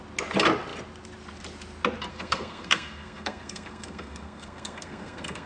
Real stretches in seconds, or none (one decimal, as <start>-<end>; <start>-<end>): 0.0-2.1